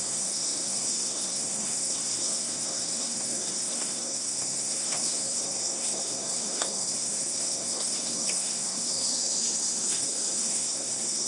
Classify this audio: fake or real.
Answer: fake